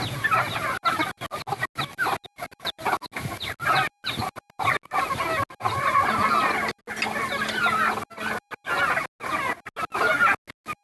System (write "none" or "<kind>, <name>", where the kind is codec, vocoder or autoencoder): none